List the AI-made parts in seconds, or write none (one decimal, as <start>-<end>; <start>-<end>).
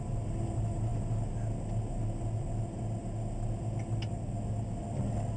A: none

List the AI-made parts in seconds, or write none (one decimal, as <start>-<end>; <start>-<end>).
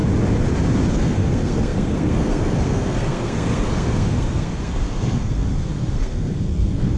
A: 0.9-7.0